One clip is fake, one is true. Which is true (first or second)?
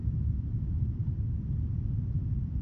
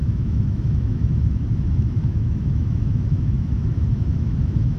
first